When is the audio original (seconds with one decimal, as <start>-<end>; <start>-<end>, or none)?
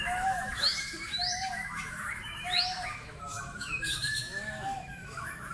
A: none